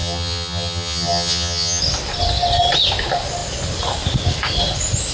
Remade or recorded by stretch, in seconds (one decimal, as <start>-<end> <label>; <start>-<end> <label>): 0.0-1.8 remade; 1.8-5.1 recorded